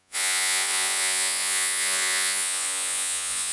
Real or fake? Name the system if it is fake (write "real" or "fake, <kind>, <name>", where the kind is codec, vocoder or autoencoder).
fake, vocoder, Vocos